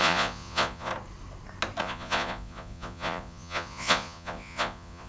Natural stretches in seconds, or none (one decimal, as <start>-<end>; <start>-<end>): 0.9-1.8